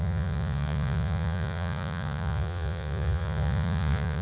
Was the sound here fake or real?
fake